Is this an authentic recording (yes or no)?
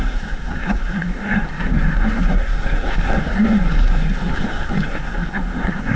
no